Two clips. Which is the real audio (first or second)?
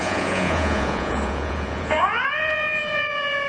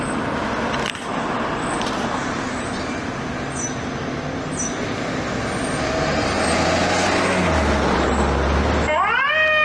second